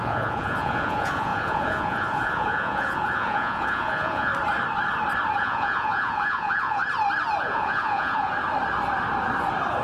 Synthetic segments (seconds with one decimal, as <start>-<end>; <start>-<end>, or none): 0.0-4.3; 5.4-6.8; 7.4-8.3